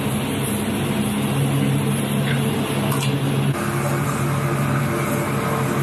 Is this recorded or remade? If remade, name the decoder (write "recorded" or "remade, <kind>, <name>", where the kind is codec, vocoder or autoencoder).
recorded